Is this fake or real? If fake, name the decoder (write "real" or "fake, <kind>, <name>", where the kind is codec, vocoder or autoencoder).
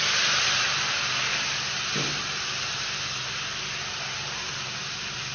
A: real